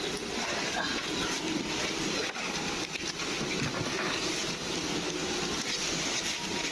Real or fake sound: real